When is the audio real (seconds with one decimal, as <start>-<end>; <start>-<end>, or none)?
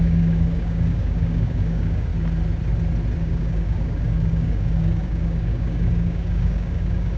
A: 2.1-3.2